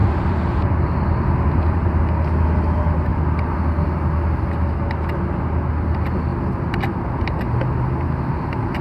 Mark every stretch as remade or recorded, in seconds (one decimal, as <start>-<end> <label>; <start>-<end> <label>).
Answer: 0.0-0.7 remade; 0.7-8.8 recorded